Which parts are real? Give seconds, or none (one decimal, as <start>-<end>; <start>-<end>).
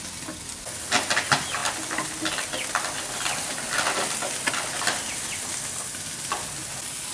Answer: 0.0-7.1